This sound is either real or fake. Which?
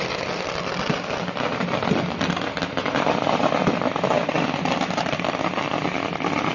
real